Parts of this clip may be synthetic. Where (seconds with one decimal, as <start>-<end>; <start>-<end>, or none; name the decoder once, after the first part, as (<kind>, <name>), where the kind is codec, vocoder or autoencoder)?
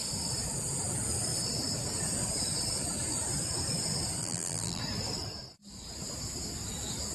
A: 4.2-4.8 (vocoder, BigVGAN v2)